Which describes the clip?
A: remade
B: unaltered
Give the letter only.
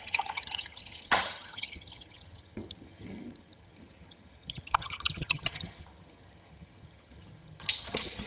A